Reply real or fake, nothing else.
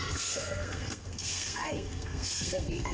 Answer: fake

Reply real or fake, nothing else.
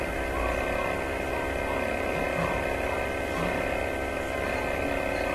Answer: real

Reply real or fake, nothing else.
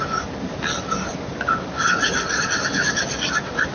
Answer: real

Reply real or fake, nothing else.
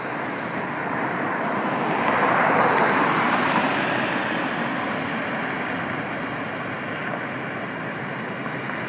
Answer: real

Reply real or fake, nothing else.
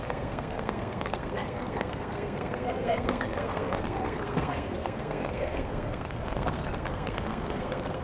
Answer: fake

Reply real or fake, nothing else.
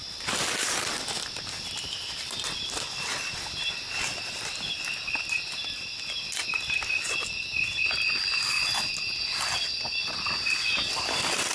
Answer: real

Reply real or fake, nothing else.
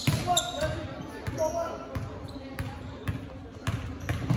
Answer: real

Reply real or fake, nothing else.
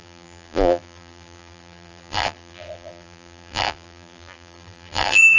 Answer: fake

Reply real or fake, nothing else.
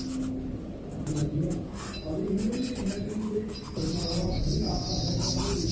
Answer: real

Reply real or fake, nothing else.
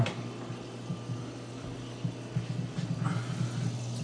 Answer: real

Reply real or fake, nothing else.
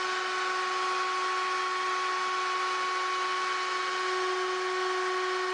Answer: real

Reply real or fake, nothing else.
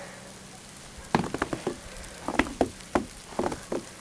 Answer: fake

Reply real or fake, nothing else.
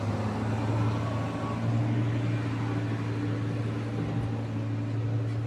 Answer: real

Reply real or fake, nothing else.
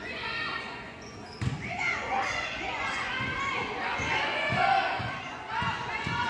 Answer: fake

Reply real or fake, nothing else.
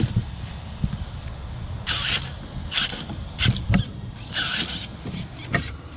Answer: real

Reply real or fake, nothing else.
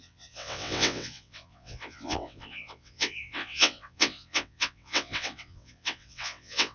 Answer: fake